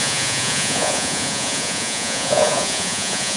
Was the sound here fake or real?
fake